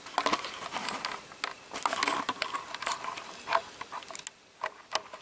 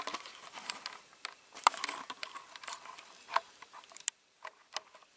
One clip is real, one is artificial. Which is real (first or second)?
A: first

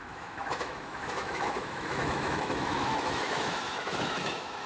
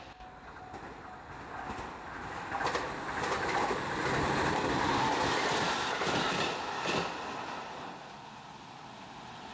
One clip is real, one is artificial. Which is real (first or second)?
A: second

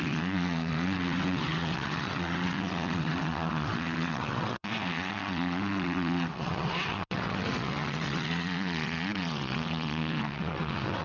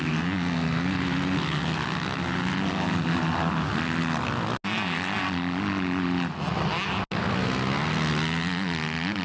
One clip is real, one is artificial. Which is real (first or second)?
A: second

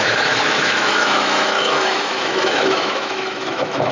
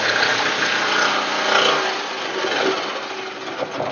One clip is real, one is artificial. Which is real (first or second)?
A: second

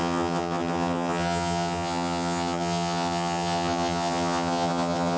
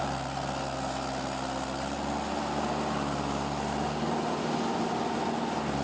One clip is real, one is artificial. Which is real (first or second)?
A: second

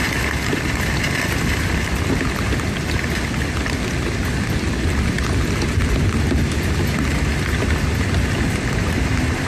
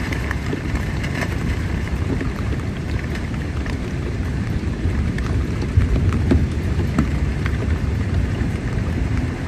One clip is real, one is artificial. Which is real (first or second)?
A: first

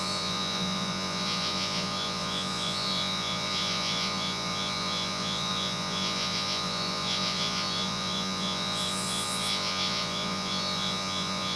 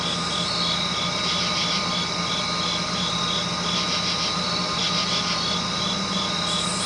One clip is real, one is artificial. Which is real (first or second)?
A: second